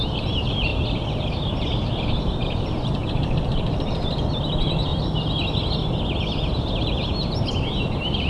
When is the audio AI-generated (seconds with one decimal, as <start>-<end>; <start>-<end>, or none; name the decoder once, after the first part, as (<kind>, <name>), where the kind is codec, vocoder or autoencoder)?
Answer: 0.0-0.7 (vocoder, BigVGAN v2); 1.2-4.9; 6.6-8.3